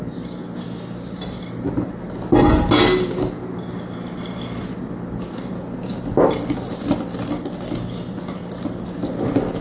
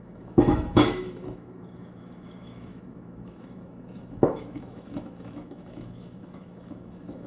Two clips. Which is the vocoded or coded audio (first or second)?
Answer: second